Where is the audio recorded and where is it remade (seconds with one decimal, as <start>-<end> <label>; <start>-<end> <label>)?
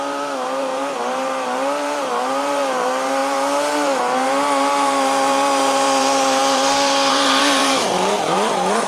0.0-8.9 remade